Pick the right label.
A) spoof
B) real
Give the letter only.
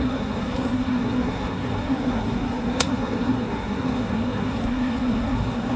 A